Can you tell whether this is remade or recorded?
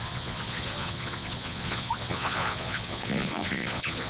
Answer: remade